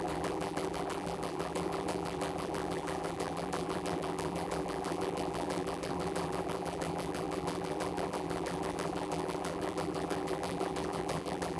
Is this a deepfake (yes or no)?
yes